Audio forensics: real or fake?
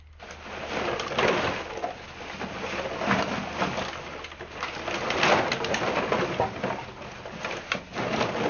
real